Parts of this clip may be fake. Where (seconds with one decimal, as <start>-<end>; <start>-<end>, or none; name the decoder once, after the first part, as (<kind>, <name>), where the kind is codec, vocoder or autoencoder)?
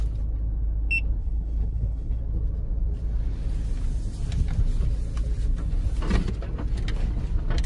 1.2-2.2 (codec, HILCodec)